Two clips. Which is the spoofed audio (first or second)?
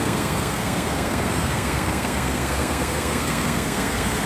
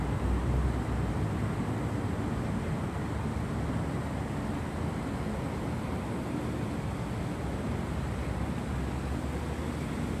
first